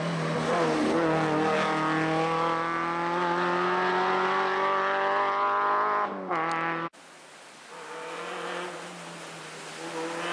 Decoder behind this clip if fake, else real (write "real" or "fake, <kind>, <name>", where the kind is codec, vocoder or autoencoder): real